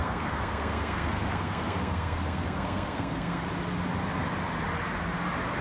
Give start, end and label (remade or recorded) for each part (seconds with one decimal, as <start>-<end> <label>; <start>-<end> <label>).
0.0-3.4 remade; 3.4-5.6 recorded